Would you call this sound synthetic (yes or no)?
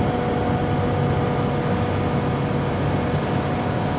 no